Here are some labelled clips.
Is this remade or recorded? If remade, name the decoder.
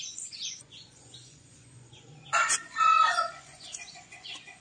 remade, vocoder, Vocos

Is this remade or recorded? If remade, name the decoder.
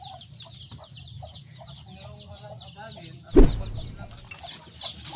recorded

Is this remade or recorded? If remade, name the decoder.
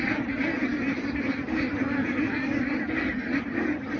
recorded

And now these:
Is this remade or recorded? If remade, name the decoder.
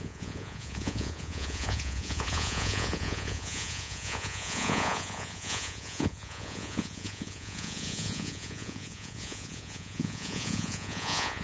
remade, vocoder, Vocos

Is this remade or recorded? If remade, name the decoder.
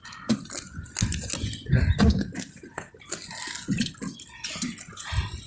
recorded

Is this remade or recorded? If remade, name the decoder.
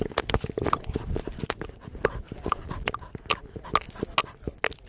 recorded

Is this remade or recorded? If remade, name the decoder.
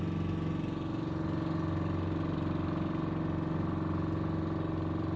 recorded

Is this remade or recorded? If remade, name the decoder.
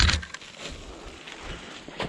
recorded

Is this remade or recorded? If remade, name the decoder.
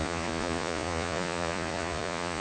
remade, vocoder, Vocos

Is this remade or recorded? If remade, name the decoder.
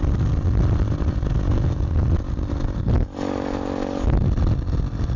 recorded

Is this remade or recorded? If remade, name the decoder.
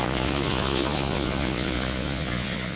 remade, vocoder, Vocos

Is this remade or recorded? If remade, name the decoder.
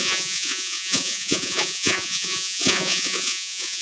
remade, vocoder, Vocos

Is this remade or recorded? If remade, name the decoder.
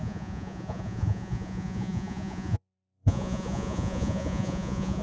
remade, vocoder, Vocos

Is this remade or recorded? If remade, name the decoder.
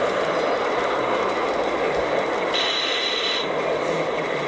recorded